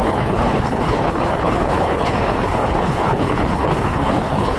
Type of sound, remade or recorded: remade